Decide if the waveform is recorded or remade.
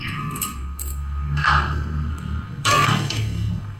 remade